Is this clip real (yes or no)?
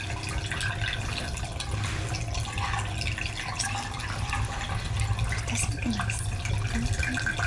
yes